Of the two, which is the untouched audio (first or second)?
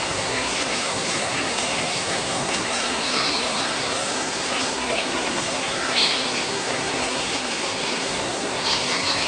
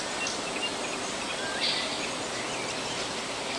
second